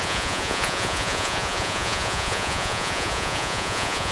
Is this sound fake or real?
fake